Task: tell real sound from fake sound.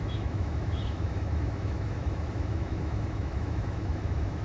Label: fake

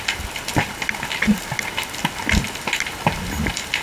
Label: real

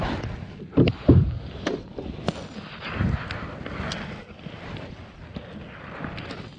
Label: real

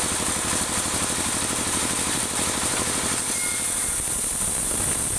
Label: real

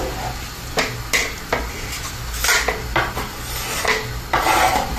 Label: real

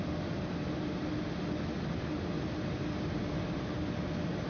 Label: real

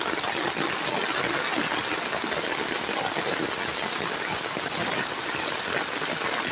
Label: real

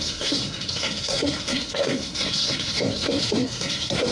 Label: fake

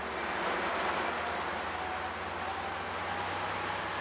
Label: real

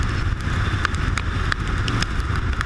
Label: real